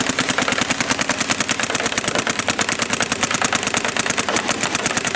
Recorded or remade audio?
recorded